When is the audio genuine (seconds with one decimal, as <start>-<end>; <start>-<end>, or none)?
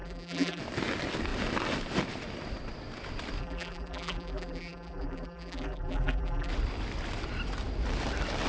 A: 0.6-3.4; 6.5-8.5